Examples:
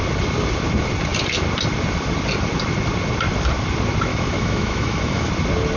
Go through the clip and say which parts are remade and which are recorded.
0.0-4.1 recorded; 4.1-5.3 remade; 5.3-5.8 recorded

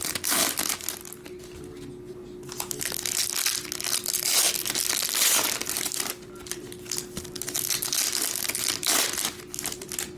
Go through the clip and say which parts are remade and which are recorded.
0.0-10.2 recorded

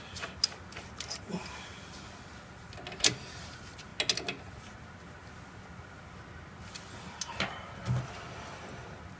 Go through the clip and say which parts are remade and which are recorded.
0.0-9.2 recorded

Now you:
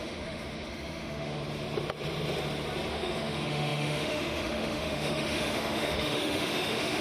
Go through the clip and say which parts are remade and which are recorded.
0.0-1.4 remade; 1.4-2.9 recorded; 2.9-7.0 remade

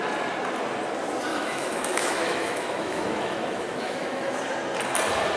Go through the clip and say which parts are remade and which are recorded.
0.0-1.3 recorded; 1.3-4.4 remade; 4.4-5.4 recorded

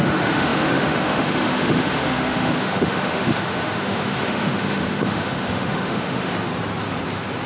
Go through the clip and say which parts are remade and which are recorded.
0.0-6.5 remade; 6.5-7.5 recorded